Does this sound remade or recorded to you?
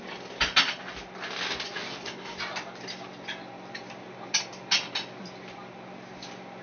recorded